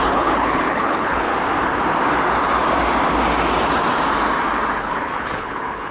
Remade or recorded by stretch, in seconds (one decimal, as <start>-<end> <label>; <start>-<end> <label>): 0.0-1.3 remade; 1.3-4.8 recorded; 4.8-5.9 remade

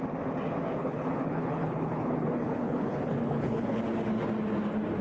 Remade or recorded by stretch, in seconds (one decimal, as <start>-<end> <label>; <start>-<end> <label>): 0.0-0.8 recorded; 0.8-3.8 remade; 3.8-5.0 recorded

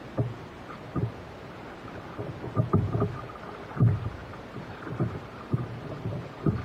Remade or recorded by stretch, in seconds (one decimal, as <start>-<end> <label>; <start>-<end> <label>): 0.0-4.2 recorded; 4.2-6.6 remade

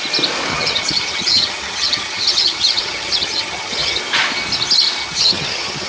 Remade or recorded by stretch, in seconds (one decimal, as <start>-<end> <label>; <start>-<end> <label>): 0.0-0.5 recorded; 0.5-4.0 remade; 4.0-5.0 recorded; 5.0-5.9 remade

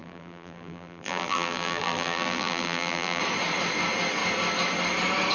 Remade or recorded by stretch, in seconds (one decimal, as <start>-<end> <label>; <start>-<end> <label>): 0.0-3.2 remade; 3.2-5.3 recorded

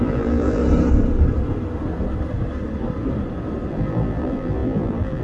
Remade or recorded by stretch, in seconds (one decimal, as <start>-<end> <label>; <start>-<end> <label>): 0.0-0.6 remade; 0.6-3.7 recorded; 3.7-5.2 remade